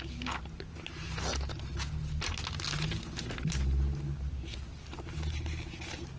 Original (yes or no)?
yes